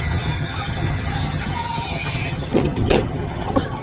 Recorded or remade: remade